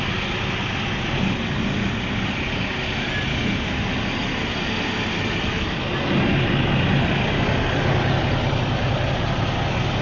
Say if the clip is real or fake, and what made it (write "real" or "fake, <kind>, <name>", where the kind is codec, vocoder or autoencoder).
real